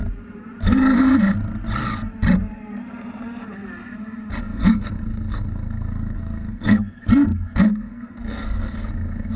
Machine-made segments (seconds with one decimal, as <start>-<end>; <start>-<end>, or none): 4.4-9.4